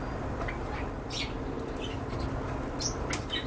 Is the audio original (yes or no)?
yes